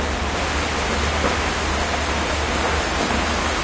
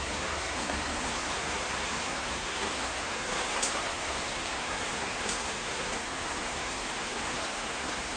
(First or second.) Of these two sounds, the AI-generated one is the second